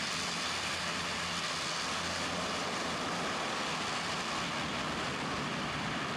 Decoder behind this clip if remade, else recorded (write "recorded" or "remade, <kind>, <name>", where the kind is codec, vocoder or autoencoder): recorded